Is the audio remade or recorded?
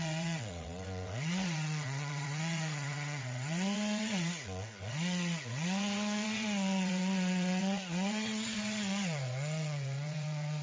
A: remade